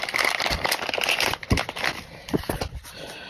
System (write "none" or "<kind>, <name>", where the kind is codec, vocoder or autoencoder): none